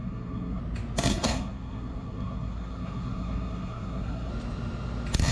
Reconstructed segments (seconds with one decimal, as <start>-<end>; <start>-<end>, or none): 0.0-0.6; 1.1-4.3